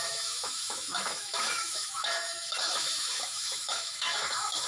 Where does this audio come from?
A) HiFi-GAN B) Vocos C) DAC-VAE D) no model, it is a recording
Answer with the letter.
C